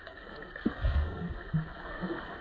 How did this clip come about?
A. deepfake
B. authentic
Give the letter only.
A